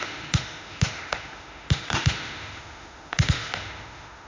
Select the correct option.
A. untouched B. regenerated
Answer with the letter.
B